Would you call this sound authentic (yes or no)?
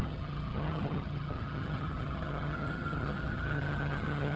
no